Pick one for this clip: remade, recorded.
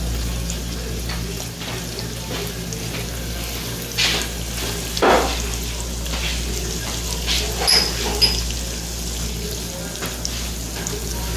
recorded